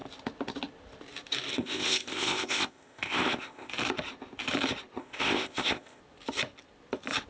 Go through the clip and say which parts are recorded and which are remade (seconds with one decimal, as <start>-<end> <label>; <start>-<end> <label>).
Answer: 0.0-1.5 recorded; 1.5-3.7 remade; 3.7-5.0 recorded; 5.0-6.0 remade; 6.0-7.3 recorded

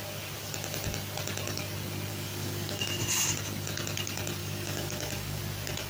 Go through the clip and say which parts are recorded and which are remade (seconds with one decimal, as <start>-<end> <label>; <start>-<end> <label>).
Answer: 0.0-2.1 recorded; 2.1-2.8 remade; 2.8-4.4 recorded; 4.4-5.4 remade; 5.4-5.9 recorded